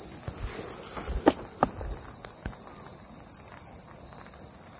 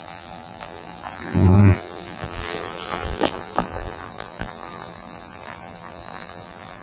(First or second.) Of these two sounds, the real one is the first